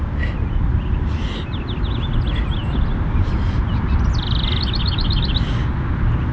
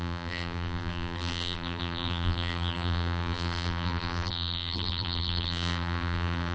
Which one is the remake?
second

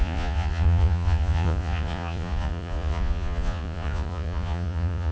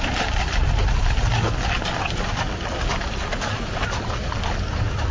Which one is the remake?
first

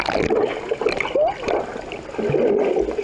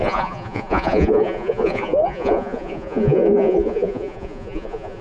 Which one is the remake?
second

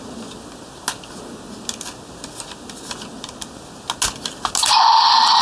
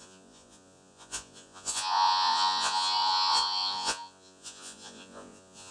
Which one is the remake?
second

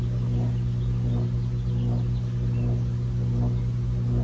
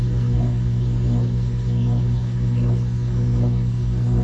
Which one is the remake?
second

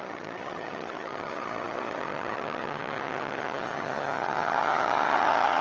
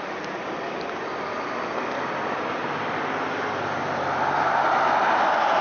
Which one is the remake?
first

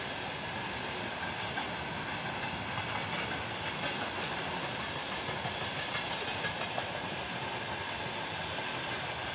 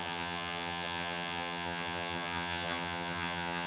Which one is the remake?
second